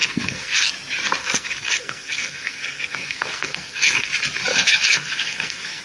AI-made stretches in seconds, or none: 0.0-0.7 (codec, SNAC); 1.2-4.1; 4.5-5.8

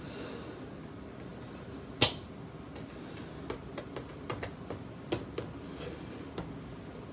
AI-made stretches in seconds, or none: none

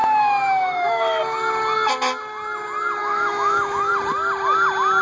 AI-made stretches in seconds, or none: 0.0-1.2 (autoencoder, DAC-VAE); 3.0-3.9